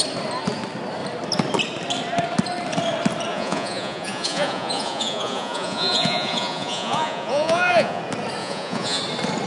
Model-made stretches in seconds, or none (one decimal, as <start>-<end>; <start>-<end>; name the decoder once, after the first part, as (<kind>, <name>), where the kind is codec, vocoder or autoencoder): 3.3-8.0 (vocoder, Vocos); 8.4-9.0